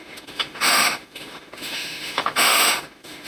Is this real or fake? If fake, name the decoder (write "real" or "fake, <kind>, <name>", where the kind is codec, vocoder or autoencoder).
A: fake, autoencoder, DAC-VAE